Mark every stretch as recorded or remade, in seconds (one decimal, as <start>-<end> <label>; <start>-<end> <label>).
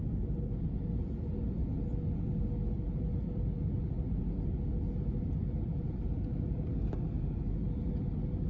0.0-8.5 recorded